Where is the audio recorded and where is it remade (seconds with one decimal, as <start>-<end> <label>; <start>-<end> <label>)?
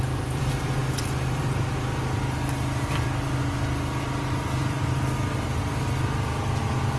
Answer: 0.0-7.0 recorded